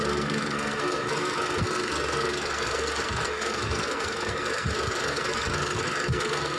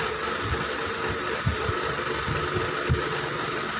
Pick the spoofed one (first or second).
first